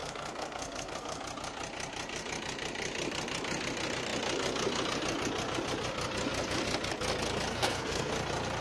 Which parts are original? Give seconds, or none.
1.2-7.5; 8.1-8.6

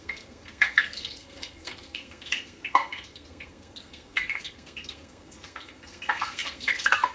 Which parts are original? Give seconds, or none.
none

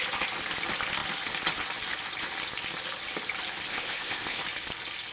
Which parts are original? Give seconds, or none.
0.0-3.7; 4.4-5.1

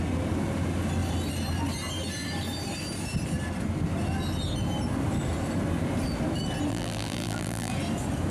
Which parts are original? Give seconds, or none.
0.0-6.7; 7.7-8.3

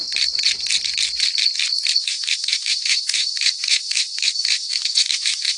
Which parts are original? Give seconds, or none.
0.0-2.0